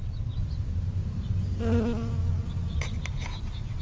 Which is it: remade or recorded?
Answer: recorded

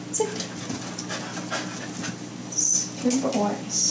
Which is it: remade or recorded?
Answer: recorded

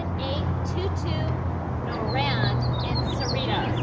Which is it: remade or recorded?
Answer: recorded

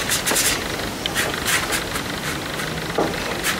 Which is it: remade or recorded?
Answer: recorded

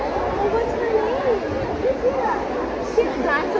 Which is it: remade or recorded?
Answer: recorded